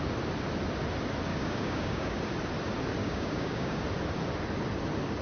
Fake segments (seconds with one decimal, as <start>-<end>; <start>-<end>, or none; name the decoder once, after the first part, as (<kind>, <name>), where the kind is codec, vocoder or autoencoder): 1.3-2.2 (codec, DAC); 3.0-3.8